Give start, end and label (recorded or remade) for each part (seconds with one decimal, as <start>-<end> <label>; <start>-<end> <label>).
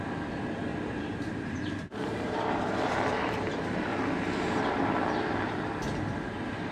0.0-0.7 recorded; 0.7-4.6 remade; 4.6-6.7 recorded